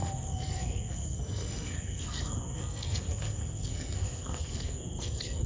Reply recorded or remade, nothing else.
remade